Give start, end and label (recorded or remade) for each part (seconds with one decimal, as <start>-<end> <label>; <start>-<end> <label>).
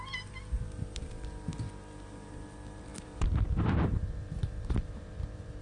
0.0-5.6 remade